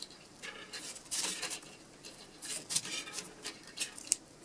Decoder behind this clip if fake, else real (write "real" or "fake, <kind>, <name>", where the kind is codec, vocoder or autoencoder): fake, vocoder, BigVGAN v2